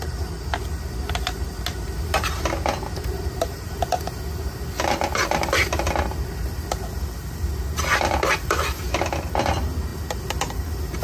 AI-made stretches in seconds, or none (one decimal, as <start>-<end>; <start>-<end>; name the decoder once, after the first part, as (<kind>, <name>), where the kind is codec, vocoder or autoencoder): none